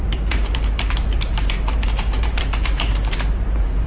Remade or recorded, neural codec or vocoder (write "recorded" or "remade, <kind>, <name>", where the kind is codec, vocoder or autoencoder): remade, vocoder, BigVGAN v2